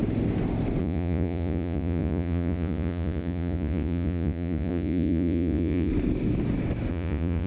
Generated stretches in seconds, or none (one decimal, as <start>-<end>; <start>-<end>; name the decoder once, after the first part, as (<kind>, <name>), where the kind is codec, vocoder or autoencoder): 0.8-5.9 (vocoder, Vocos); 6.9-7.5